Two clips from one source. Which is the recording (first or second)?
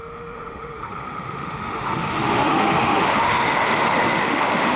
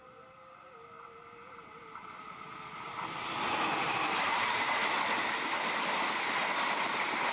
second